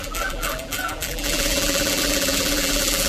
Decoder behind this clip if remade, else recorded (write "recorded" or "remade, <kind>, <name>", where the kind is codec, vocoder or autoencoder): remade, vocoder, BigVGAN v2